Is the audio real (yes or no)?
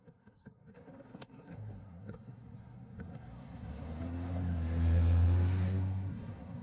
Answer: no